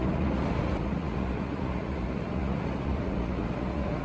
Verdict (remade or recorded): remade